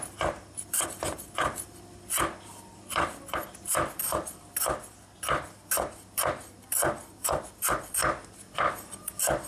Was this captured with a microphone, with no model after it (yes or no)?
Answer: yes